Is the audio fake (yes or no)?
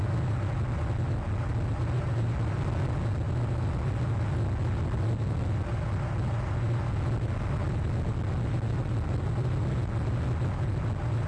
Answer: no